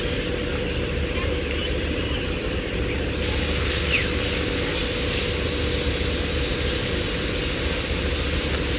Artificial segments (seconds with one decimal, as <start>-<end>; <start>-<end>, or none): none